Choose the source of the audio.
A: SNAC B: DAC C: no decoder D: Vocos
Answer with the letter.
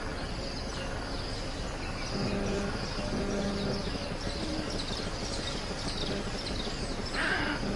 C